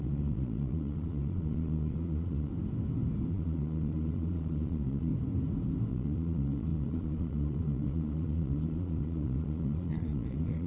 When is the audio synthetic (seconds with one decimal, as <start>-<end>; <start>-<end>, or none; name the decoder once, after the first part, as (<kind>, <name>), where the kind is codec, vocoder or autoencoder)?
0.0-2.5 (vocoder, Vocos); 3.3-5.1; 5.9-10.7